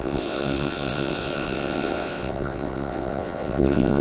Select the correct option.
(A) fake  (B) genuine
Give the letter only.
A